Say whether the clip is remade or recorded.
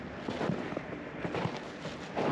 recorded